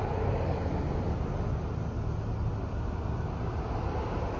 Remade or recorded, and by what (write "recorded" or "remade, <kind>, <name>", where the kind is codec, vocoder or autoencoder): recorded